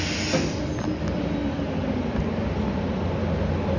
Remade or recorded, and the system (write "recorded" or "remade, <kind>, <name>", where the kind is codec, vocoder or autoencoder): recorded